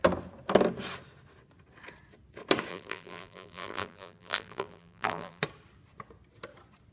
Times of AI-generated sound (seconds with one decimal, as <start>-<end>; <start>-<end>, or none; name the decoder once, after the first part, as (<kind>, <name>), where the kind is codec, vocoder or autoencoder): 2.7-5.4 (vocoder, BigVGAN v2)